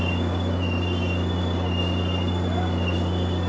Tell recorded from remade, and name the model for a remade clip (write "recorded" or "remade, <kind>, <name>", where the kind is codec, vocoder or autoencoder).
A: recorded